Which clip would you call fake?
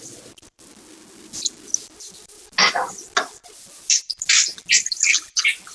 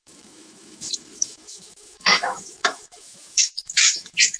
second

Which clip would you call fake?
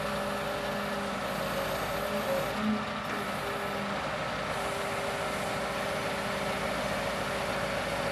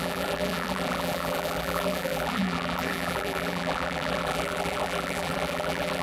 second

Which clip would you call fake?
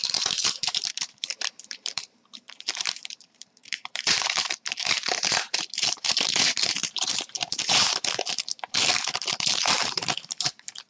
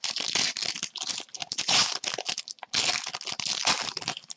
first